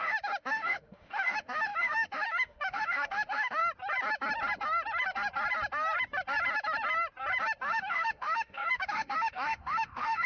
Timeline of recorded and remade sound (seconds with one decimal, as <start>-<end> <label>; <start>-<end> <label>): 0.0-3.6 remade; 3.6-7.7 recorded; 7.7-10.3 remade